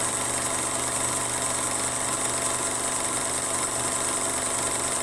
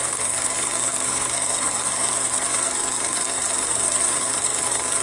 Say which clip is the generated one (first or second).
second